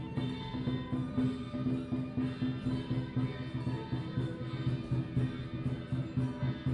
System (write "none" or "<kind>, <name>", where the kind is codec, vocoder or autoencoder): none